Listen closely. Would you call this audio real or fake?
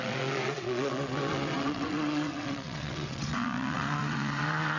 fake